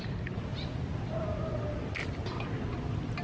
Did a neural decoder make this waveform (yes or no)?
no